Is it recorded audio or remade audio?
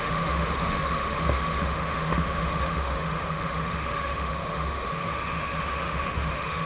remade